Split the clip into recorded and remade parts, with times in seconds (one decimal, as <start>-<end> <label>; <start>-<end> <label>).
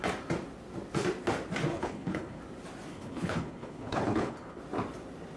0.0-1.7 recorded; 1.7-2.4 remade; 2.4-2.9 recorded; 2.9-4.6 remade; 4.6-5.4 recorded